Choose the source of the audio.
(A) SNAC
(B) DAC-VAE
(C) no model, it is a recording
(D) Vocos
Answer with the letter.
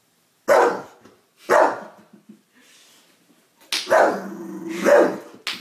C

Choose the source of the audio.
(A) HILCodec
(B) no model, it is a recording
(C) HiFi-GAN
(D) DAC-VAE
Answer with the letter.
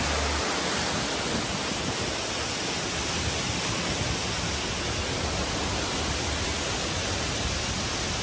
B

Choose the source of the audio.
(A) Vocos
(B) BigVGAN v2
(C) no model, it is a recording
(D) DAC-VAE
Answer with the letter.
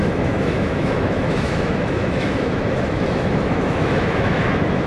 D